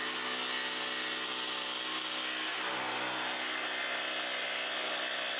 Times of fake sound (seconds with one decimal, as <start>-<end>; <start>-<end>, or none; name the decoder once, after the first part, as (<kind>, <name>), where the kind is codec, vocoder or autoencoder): none